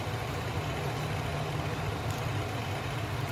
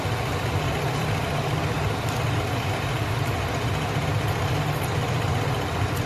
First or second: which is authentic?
first